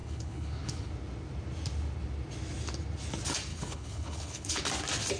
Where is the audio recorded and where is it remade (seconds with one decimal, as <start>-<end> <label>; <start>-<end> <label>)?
0.0-0.9 remade; 0.9-3.5 recorded; 3.5-4.6 remade; 4.6-5.2 recorded